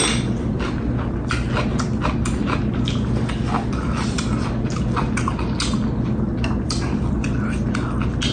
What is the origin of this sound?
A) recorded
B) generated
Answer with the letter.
A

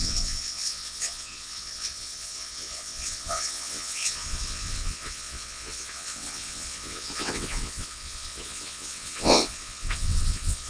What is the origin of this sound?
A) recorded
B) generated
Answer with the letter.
B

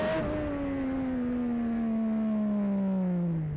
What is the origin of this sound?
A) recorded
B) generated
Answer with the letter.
A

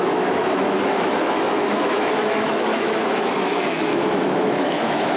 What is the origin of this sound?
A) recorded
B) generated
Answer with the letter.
B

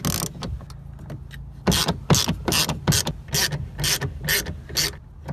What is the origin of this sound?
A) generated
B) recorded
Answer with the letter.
B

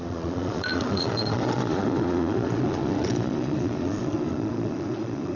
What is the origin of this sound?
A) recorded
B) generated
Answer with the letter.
B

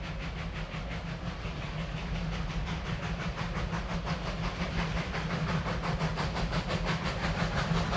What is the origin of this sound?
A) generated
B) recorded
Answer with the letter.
B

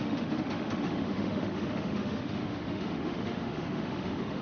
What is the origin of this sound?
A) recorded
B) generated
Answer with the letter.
B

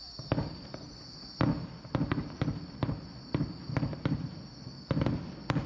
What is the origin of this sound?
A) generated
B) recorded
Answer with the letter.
B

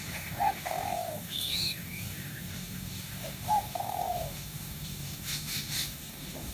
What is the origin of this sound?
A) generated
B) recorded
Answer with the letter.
A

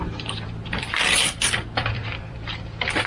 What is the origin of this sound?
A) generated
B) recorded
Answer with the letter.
A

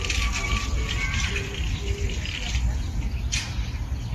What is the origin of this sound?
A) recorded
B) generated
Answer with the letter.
A